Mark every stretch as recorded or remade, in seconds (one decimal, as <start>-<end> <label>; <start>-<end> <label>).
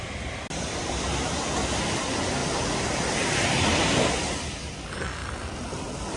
0.0-6.2 recorded